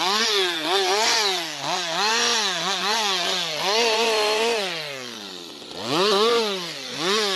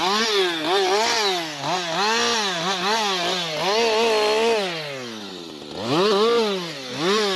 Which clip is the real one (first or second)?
second